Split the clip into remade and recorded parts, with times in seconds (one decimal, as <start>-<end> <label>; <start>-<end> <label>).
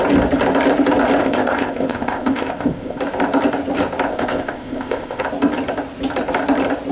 0.0-1.2 recorded; 1.2-3.0 remade; 3.0-4.1 recorded; 4.1-5.2 remade; 5.2-6.9 recorded